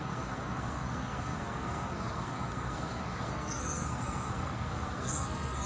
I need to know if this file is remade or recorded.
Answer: remade